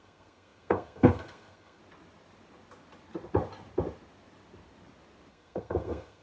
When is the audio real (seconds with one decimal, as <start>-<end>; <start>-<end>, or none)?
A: 1.8-5.3

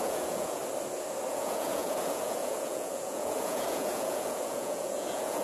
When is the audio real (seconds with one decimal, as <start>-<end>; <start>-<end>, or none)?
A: 0.6-1.3

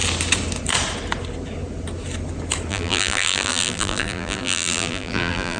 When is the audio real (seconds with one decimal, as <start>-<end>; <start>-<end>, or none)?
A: 0.0-2.7

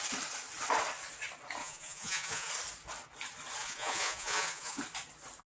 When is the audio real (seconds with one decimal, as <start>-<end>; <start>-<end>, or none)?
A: 0.0-1.6; 2.5-3.6; 4.8-5.5

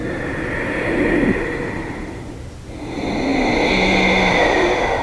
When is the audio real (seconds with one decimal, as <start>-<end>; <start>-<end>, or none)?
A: 0.0-5.0

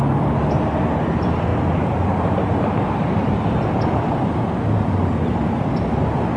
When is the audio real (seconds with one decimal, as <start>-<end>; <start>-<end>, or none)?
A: 0.0-1.5; 4.3-6.4

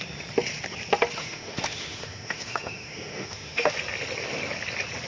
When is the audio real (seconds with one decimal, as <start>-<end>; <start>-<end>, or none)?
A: 0.0-1.2; 3.7-5.1

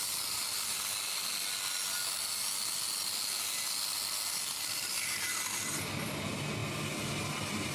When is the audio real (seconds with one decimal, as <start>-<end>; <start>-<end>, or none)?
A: 0.0-7.7